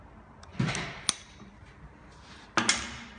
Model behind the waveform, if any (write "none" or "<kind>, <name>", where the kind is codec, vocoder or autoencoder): none